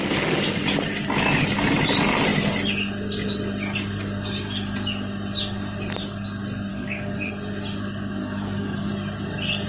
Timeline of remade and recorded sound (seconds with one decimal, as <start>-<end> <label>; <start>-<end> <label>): 0.0-6.7 recorded; 6.7-7.3 remade; 7.3-8.2 recorded; 8.2-8.9 remade; 8.9-9.7 recorded